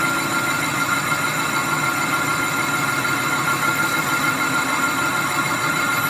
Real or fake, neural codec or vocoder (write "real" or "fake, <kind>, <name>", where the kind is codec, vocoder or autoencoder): real